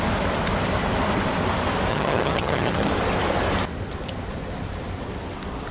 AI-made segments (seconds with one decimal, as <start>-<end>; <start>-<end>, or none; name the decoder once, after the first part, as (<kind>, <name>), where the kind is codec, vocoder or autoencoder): 1.9-2.9 (vocoder, HiFi-GAN)